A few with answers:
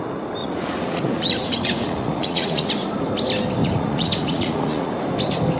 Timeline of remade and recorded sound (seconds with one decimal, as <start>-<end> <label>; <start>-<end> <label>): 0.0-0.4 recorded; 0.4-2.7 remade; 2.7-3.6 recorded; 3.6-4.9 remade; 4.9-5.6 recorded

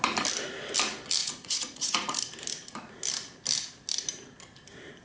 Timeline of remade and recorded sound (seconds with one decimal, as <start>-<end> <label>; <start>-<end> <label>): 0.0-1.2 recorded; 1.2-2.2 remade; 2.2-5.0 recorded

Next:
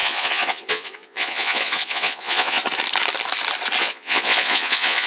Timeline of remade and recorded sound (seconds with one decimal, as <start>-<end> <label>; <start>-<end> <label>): 0.0-2.6 remade; 2.6-3.8 recorded; 3.8-5.1 remade